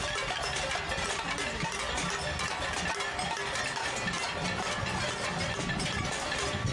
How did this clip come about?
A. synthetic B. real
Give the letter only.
B